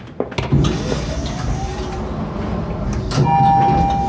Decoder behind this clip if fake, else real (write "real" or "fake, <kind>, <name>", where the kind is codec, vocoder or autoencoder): real